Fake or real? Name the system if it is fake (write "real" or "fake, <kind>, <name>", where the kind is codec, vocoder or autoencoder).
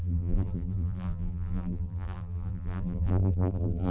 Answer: fake, vocoder, BigVGAN v2